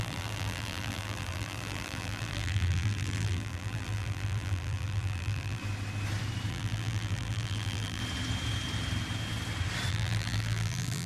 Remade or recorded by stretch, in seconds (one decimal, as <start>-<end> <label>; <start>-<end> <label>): 0.0-5.6 remade; 5.6-6.5 recorded; 6.5-8.0 remade; 8.0-9.9 recorded; 9.9-11.1 remade